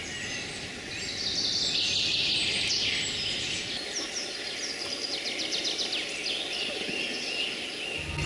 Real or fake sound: real